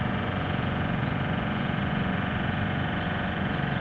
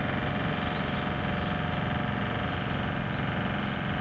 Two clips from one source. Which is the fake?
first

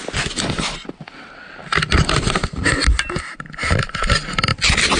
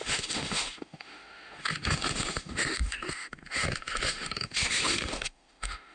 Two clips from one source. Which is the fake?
second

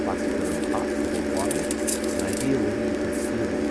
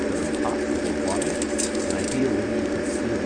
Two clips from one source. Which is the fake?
second